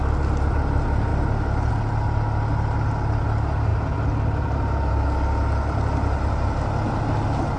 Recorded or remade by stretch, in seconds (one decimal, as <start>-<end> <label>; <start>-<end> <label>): 0.0-7.6 recorded